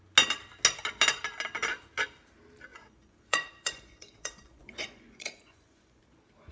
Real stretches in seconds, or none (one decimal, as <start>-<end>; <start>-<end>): 0.0-2.7; 6.0-6.5